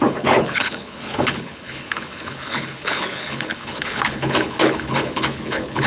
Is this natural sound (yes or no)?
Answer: no